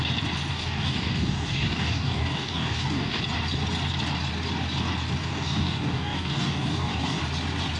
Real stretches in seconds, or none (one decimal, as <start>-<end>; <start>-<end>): 0.0-0.5; 3.2-5.2; 7.2-7.8